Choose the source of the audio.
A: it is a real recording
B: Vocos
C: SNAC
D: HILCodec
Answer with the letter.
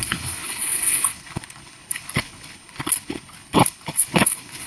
D